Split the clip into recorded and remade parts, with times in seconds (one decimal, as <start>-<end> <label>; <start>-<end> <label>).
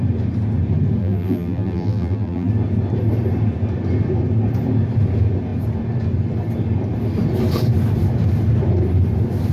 0.0-1.0 recorded; 1.0-2.5 remade; 2.5-9.5 recorded